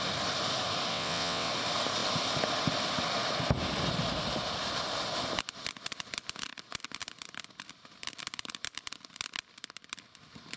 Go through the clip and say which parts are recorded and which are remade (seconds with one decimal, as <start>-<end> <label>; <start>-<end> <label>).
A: 0.0-0.9 recorded; 0.9-1.5 remade; 1.5-10.6 recorded